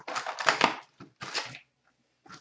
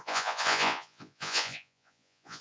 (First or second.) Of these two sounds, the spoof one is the second